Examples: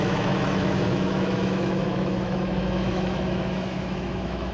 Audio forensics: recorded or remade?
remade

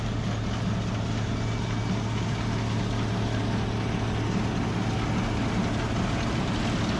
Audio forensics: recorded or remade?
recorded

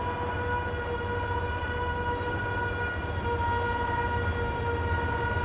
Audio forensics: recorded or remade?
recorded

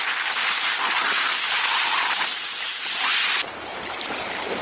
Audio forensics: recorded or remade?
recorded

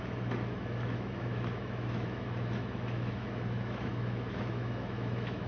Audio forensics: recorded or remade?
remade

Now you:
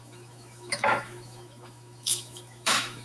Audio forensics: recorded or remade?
remade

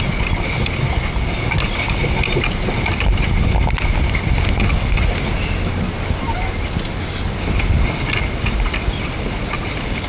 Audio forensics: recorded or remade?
recorded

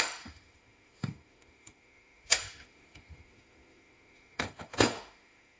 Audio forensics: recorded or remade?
remade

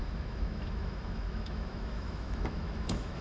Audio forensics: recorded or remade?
remade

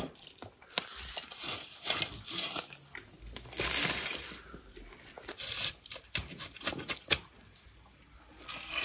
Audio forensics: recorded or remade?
recorded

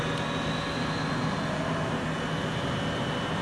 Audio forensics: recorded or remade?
recorded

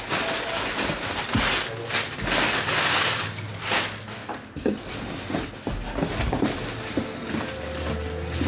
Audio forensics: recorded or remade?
recorded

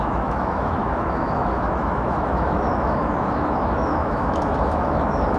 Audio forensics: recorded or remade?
remade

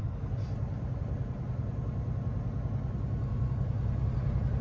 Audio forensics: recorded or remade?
recorded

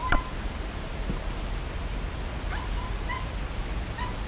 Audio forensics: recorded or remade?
recorded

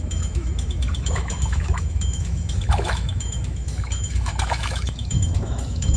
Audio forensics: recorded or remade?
remade